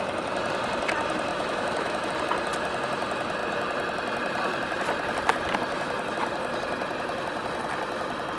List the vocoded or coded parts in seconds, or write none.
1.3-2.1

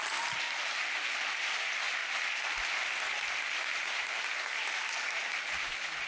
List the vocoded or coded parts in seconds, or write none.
none

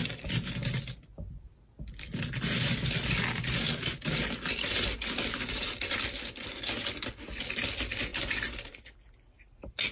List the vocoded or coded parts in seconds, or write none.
none